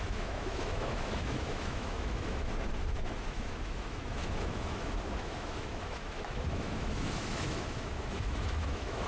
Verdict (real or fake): fake